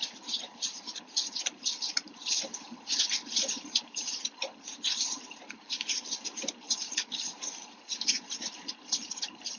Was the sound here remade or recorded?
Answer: remade